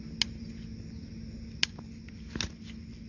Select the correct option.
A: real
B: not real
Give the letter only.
A